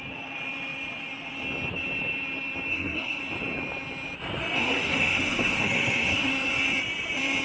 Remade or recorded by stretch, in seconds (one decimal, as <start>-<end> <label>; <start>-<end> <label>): 0.0-2.7 recorded; 2.7-3.2 remade; 3.2-4.6 recorded; 4.6-6.3 remade; 6.3-7.4 recorded